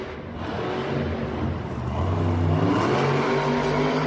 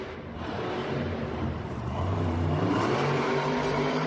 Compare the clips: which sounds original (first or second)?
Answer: first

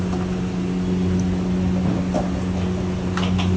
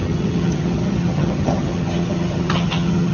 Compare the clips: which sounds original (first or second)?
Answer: first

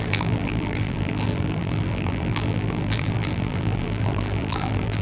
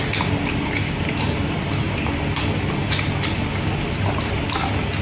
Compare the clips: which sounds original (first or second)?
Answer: second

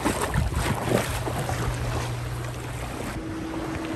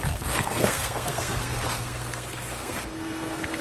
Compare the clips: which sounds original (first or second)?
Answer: first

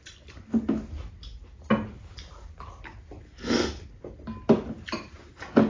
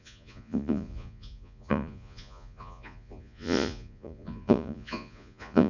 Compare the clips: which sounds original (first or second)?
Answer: first